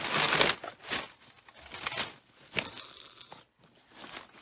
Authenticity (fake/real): real